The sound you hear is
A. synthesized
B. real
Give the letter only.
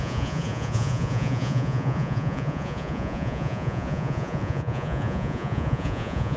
A